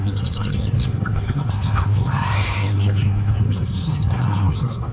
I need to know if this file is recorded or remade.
remade